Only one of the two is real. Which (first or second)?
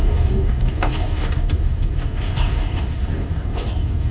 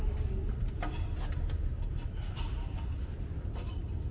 second